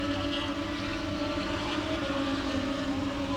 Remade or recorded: recorded